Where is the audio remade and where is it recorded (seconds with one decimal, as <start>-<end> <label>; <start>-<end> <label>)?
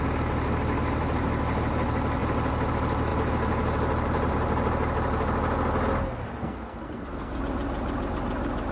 0.0-6.4 recorded; 6.4-7.4 remade; 7.4-8.7 recorded